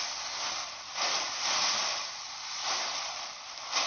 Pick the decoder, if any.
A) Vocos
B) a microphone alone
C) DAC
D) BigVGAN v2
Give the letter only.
D